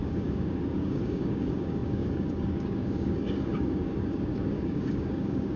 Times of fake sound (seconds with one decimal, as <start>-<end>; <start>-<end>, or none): 0.0-5.6